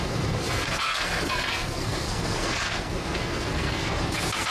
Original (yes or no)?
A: no